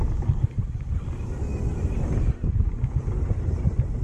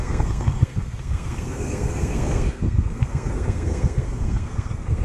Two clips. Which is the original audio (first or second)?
first